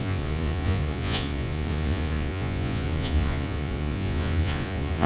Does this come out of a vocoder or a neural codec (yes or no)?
yes